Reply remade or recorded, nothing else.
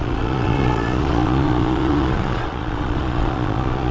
remade